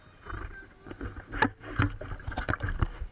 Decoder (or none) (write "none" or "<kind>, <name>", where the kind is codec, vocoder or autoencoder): none